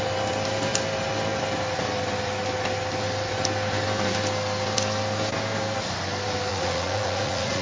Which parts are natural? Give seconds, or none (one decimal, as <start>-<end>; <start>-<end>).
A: 0.0-6.5